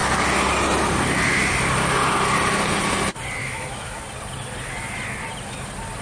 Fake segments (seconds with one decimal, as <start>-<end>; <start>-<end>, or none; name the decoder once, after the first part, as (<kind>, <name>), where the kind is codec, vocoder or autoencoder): 3.4-4.0 (autoencoder, DAC-VAE)